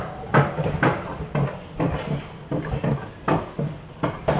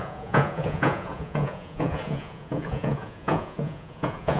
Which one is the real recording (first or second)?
first